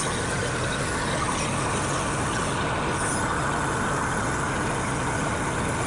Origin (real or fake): real